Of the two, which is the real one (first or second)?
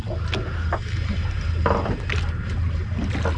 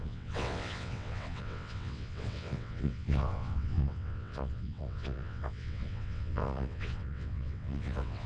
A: first